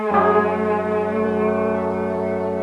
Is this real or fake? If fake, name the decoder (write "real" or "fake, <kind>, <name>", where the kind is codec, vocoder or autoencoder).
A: fake, vocoder, BigVGAN v2